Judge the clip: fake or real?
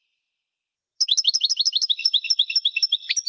real